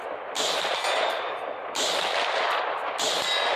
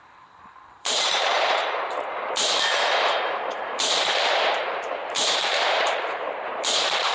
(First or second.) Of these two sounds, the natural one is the first